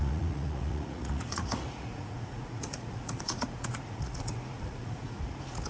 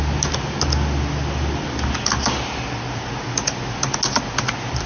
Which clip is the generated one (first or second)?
first